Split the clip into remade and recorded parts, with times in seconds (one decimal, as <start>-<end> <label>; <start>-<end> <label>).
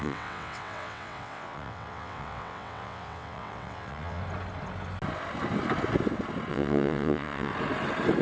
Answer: 0.0-4.2 remade; 4.2-6.5 recorded; 6.5-7.5 remade; 7.5-8.2 recorded